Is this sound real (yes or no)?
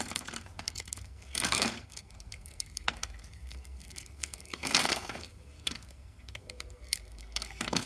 no